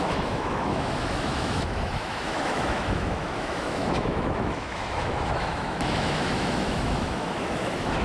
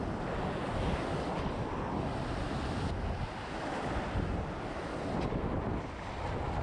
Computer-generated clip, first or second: first